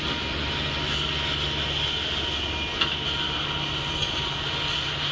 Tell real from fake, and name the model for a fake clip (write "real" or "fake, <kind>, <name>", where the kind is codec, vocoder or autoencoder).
real